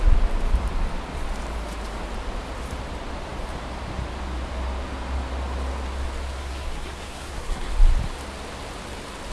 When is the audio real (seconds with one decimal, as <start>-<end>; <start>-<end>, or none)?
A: 0.0-6.4; 7.7-9.3